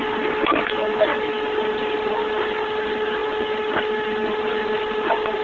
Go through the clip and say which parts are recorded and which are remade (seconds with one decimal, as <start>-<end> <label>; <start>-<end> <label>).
0.0-5.4 recorded